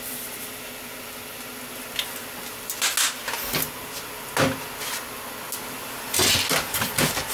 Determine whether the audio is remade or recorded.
recorded